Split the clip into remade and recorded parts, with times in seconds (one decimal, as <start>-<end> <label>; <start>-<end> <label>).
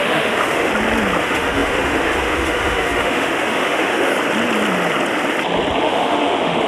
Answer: 0.0-0.7 remade; 0.7-1.2 recorded; 1.2-4.1 remade; 4.1-5.8 recorded; 5.8-6.7 remade